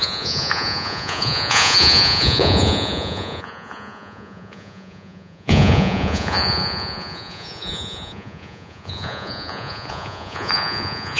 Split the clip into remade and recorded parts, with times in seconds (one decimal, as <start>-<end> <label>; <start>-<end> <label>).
0.0-11.2 remade